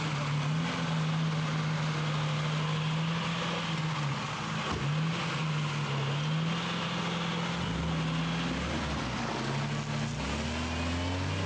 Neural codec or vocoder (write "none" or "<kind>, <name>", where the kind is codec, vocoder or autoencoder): none